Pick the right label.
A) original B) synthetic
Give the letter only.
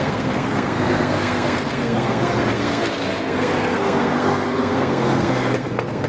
B